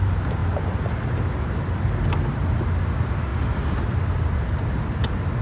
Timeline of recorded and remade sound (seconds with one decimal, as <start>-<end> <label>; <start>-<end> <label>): 0.0-3.3 recorded; 3.3-3.8 remade; 3.8-5.4 recorded